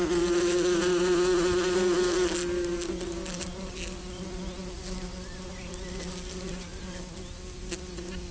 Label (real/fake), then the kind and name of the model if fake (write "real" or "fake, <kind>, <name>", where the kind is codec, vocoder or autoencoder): real